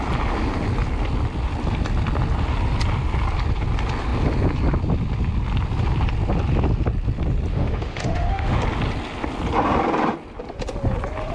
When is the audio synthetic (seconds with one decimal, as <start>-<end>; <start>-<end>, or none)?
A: 7.5-8.6